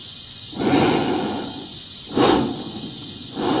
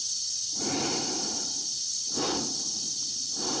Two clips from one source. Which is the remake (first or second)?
first